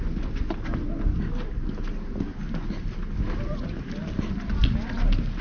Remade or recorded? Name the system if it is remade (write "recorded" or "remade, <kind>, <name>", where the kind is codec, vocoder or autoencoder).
recorded